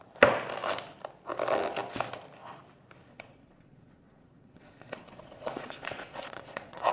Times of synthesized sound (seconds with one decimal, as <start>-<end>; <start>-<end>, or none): 3.1-6.9